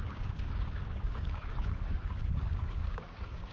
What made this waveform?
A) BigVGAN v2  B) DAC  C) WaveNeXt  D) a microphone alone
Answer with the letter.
B